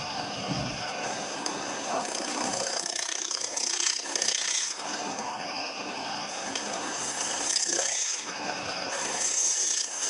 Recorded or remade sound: remade